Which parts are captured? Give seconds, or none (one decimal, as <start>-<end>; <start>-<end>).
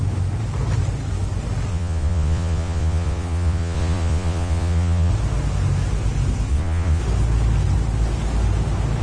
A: 0.0-1.7; 5.1-6.5; 7.0-9.0